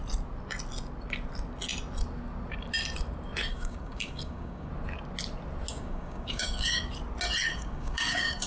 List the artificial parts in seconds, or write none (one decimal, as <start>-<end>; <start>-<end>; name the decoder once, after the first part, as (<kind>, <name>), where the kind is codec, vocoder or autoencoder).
3.5-4.7 (codec, DAC); 5.7-6.9; 7.5-8.5